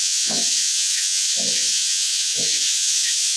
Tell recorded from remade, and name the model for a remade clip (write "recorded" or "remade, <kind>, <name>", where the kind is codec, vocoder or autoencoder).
remade, vocoder, Vocos